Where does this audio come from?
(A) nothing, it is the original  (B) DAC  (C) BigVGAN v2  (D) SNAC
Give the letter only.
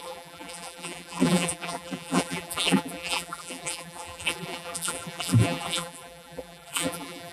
C